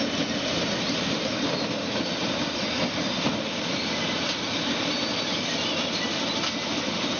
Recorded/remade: recorded